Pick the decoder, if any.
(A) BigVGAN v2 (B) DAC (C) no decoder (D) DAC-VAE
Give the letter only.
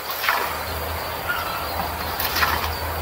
C